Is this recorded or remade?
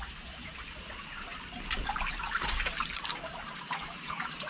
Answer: recorded